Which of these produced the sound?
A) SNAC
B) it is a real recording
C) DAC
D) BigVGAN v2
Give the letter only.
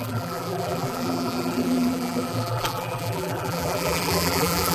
D